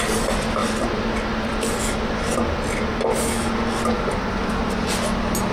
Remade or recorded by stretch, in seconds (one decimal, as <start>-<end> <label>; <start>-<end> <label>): 0.0-5.5 recorded